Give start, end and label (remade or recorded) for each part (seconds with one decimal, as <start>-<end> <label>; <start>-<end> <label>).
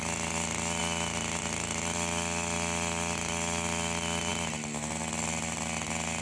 0.0-6.2 recorded